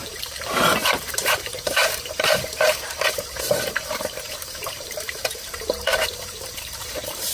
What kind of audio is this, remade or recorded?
remade